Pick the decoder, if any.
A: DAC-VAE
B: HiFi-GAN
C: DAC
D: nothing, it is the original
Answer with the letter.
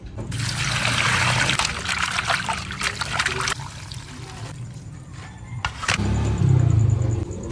D